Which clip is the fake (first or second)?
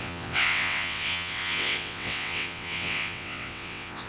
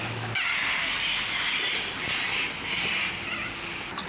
first